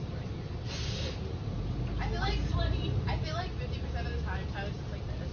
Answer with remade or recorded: recorded